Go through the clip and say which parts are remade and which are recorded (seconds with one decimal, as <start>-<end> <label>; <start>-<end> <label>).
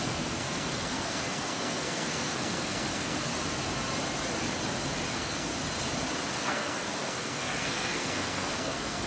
0.0-3.3 remade; 3.3-5.1 recorded; 5.1-5.5 remade; 5.5-6.3 recorded; 6.3-9.1 remade